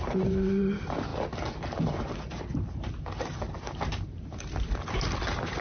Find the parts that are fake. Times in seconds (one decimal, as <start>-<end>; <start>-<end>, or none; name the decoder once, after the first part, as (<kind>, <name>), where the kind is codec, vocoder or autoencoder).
0.0-1.1 (vocoder, BigVGAN v2); 1.6-5.6